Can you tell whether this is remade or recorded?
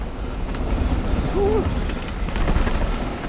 recorded